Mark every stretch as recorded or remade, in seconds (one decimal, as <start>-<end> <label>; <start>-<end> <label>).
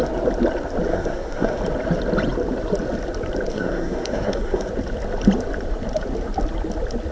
0.0-0.9 recorded; 0.9-1.6 remade; 1.6-3.5 recorded; 3.5-4.7 remade; 4.7-7.1 recorded